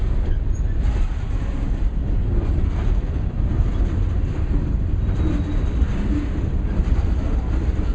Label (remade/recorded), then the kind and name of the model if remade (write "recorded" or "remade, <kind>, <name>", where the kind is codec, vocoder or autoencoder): recorded